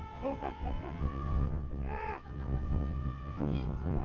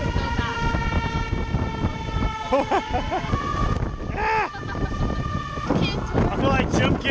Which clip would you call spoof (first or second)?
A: first